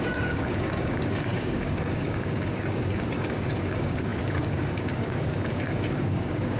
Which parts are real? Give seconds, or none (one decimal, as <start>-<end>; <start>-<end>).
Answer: none